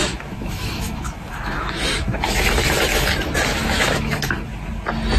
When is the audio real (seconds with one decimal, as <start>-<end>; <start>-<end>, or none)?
3.1-3.5; 4.3-5.2